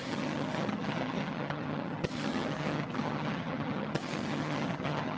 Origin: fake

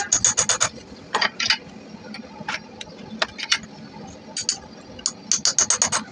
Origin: real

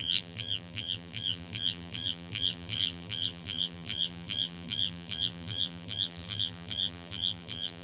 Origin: fake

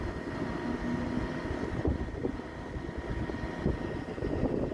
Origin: real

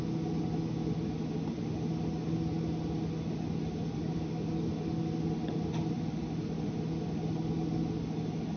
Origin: real